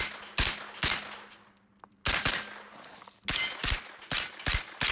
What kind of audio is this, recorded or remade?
recorded